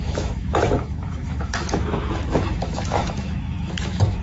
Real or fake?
fake